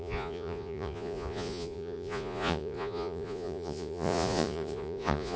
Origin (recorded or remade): remade